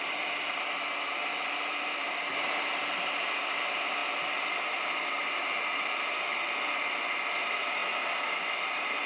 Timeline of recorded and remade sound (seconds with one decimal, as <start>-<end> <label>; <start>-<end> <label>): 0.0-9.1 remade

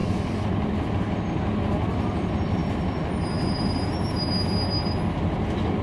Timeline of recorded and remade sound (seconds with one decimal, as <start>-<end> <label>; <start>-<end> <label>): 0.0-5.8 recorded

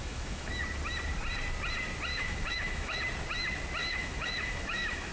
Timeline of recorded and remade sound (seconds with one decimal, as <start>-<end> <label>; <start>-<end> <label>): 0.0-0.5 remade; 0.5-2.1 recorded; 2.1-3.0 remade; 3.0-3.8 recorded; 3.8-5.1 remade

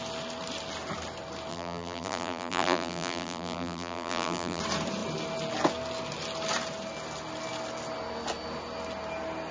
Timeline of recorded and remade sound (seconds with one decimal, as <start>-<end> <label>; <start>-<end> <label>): 0.0-1.5 recorded; 1.5-4.6 remade; 4.6-9.5 recorded

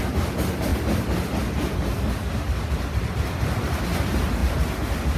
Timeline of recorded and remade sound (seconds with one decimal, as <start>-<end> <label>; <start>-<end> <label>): 0.0-5.2 recorded

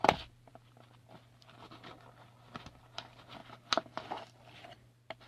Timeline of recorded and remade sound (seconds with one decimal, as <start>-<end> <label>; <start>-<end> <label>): 0.0-0.5 remade; 0.5-2.8 recorded; 2.8-3.4 remade; 3.4-4.2 recorded; 4.2-5.3 remade

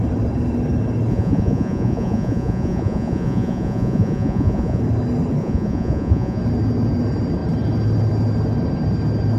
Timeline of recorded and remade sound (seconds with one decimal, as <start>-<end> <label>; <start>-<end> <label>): 0.0-1.1 recorded; 1.1-4.8 remade; 4.8-5.4 recorded; 5.4-6.4 remade; 6.4-9.4 recorded

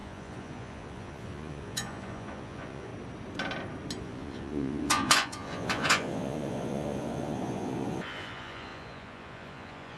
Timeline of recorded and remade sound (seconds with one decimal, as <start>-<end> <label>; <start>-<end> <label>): 0.0-2.9 remade; 2.9-4.0 recorded; 4.0-10.0 remade